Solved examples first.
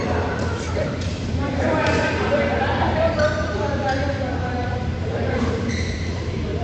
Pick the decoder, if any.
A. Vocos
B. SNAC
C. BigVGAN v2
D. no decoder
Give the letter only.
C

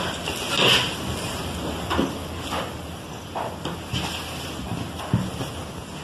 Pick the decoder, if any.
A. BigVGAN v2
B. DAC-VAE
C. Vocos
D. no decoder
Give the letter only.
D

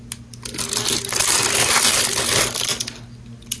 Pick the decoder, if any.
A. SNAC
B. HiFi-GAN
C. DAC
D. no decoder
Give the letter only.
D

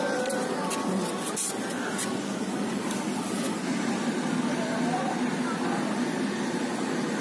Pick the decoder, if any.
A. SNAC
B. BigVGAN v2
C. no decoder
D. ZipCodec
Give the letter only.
C